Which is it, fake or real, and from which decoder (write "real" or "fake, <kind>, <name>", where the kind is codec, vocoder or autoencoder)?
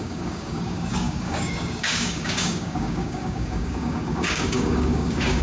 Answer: fake, codec, DAC